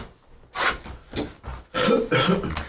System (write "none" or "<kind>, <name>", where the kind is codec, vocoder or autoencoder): none